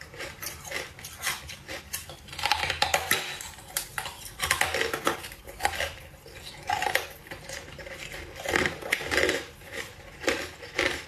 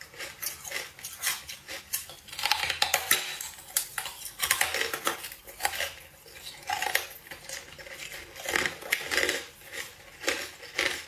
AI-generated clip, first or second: first